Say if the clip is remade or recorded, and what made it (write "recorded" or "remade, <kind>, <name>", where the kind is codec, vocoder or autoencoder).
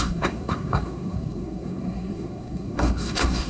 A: remade, codec, SNAC